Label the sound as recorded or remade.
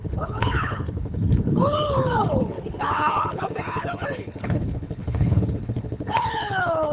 remade